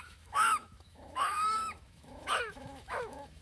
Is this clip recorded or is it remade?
remade